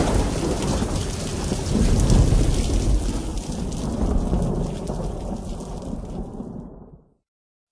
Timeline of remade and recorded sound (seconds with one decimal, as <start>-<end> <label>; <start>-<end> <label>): 0.0-7.7 recorded